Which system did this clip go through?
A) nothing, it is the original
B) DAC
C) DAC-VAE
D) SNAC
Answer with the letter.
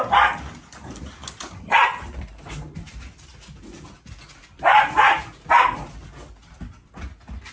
A